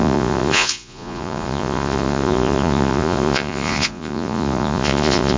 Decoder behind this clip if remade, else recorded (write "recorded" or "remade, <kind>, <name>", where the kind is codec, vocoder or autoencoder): remade, vocoder, Vocos